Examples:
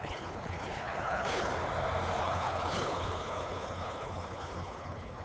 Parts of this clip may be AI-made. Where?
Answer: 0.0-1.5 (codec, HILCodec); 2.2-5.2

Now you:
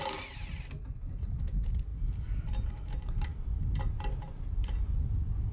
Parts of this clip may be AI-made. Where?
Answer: none

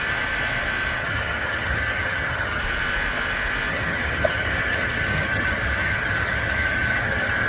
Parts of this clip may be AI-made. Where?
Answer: 1.0-2.6 (vocoder, HiFi-GAN); 3.7-7.5

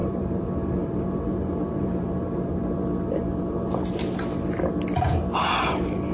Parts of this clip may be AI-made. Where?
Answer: 0.0-2.5 (vocoder, BigVGAN v2)

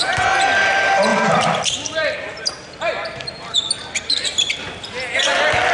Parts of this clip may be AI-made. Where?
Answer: 1.1-4.5 (vocoder, BigVGAN v2)